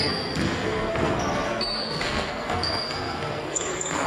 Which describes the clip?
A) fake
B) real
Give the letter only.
A